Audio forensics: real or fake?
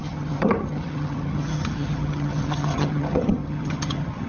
fake